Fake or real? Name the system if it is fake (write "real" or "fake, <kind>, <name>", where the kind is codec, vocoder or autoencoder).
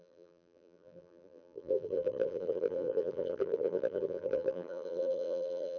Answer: fake, vocoder, BigVGAN v2